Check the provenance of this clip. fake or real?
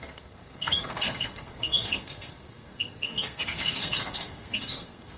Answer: fake